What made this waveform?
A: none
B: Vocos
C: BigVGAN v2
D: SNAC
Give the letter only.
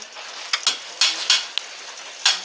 A